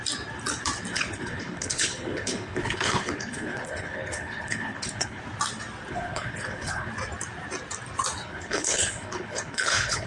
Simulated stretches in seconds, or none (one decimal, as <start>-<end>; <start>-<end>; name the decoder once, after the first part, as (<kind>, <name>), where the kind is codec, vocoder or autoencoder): 0.9-5.2 (codec, HILCodec); 5.9-6.9; 8.2-10.1